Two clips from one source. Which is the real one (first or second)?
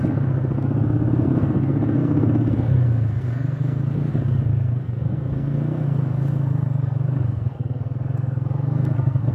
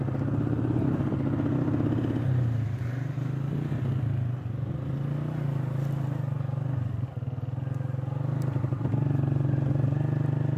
second